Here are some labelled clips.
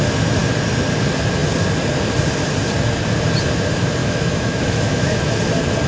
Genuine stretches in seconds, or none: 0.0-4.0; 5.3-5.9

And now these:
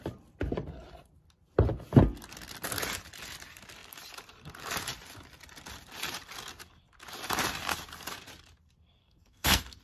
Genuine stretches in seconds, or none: 0.0-9.0

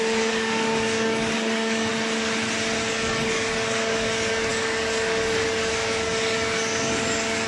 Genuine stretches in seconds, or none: 1.9-2.9

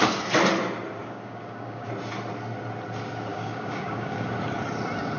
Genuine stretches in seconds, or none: 0.0-1.0; 1.9-3.3; 4.3-5.2

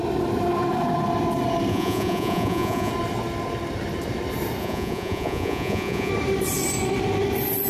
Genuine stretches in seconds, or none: 0.0-1.7; 2.9-4.6; 6.1-7.7